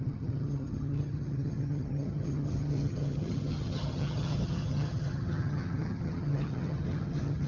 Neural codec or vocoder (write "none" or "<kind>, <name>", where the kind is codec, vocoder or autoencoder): vocoder, HiFi-GAN